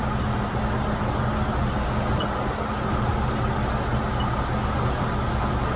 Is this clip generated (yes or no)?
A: no